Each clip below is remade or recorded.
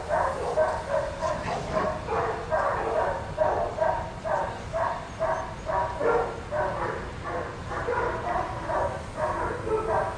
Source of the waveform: recorded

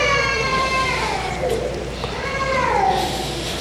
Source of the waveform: remade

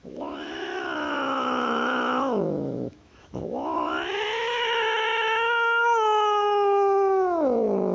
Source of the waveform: remade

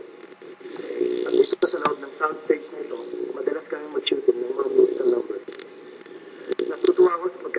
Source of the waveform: recorded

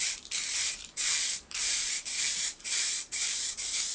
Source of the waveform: remade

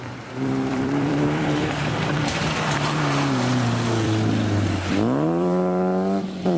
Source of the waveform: remade